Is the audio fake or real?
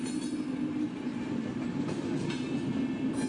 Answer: real